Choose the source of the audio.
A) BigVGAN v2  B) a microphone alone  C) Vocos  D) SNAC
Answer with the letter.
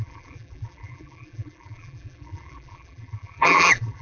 A